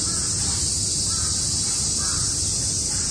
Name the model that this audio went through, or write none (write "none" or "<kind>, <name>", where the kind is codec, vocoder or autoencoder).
none